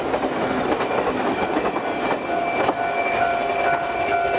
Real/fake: real